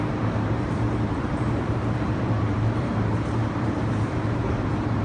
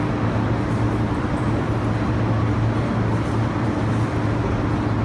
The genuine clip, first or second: second